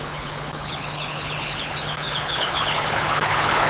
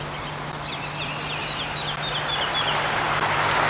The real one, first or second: second